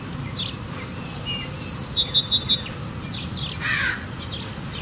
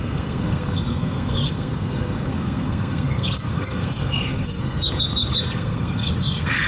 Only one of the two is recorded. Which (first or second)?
first